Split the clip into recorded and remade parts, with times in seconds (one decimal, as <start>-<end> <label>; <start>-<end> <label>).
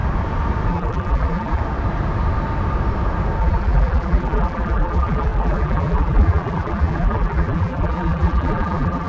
0.0-0.7 recorded; 0.7-1.6 remade; 1.6-3.4 recorded; 3.4-9.1 remade